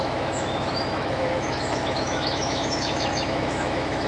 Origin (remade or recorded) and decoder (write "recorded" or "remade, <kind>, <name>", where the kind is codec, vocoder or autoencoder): remade, autoencoder, DAC-VAE